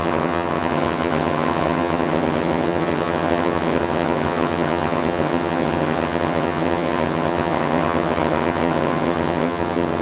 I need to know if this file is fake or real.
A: fake